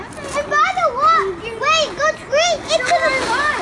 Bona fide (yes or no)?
yes